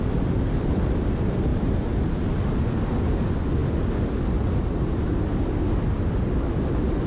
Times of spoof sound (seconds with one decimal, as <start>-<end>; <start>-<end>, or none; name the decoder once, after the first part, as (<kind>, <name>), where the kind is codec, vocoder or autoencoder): none